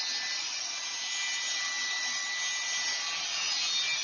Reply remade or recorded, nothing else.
recorded